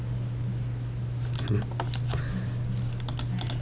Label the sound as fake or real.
real